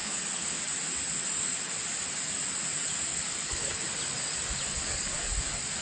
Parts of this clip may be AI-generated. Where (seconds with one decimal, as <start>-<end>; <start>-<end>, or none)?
0.0-0.6; 3.1-3.8